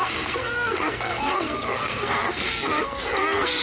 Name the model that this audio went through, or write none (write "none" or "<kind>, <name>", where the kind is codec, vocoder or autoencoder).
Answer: codec, SNAC